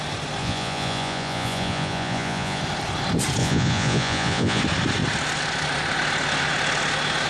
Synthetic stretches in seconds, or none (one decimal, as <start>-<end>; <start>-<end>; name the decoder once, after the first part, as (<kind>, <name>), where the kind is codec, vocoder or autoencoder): 0.4-2.6 (vocoder, Vocos); 3.4-4.6